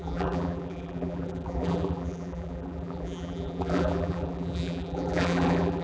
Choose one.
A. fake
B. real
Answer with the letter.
A